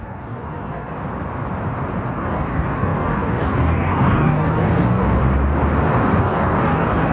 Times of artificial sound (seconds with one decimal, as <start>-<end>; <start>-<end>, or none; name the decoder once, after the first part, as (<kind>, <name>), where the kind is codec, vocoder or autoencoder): 0.0-0.9 (codec, DAC); 2.1-5.2; 6.2-7.1